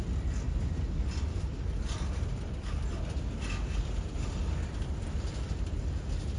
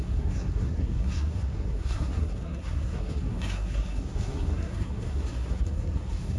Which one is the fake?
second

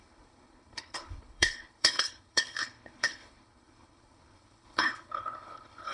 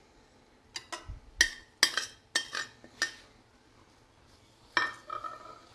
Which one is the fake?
first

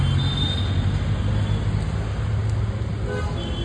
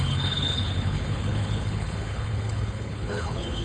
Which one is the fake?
second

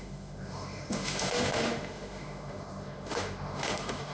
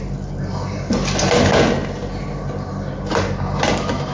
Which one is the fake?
first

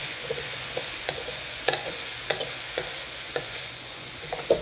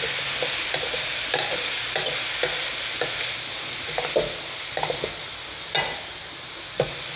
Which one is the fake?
first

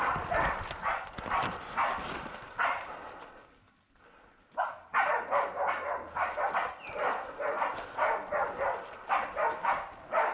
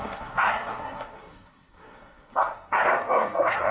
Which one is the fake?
second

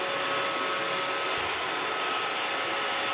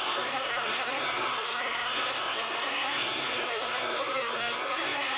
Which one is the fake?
second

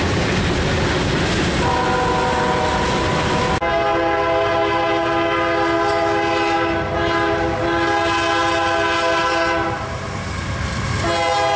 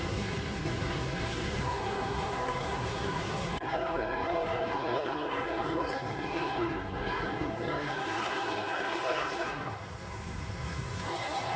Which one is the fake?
second